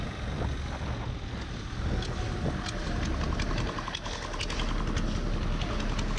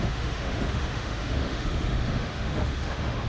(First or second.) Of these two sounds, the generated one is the second